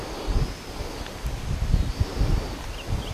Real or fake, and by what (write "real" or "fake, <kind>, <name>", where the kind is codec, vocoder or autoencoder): real